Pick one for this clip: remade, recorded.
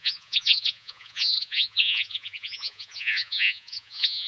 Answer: remade